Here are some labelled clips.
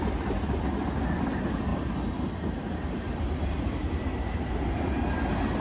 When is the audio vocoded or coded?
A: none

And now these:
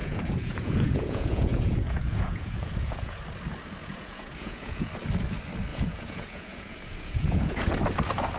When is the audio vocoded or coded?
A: 0.0-3.2 (vocoder, Vocos); 3.8-4.9; 5.7-7.7

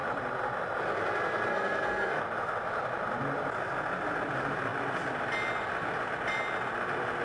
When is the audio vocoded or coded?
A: 1.5-2.2 (codec, SNAC)

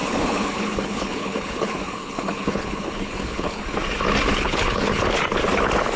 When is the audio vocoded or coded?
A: 0.0-3.6 (codec, HILCodec); 4.3-5.0

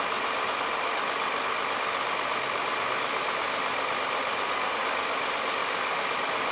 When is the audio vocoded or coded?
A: 5.6-6.5 (vocoder, BigVGAN v2)

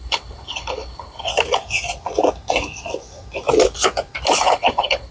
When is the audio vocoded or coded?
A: 0.0-1.3 (codec, HILCodec); 4.4-5.1